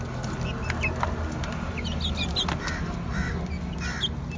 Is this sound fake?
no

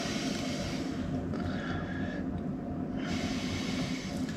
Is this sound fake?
no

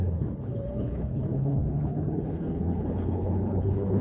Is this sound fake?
yes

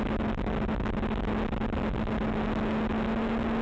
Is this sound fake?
no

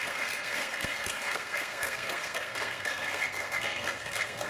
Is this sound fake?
yes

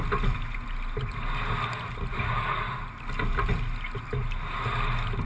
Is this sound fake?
no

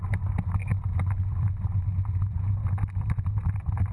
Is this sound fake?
no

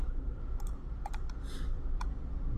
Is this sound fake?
yes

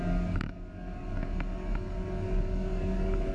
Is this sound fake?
yes